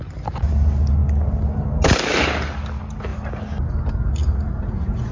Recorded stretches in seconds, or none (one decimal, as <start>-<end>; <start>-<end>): 0.0-4.2